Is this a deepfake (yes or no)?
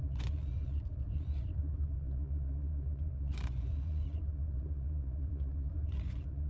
yes